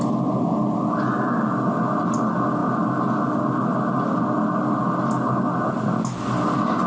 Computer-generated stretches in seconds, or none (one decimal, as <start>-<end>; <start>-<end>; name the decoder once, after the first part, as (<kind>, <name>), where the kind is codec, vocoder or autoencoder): none